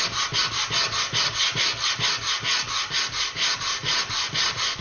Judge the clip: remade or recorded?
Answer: recorded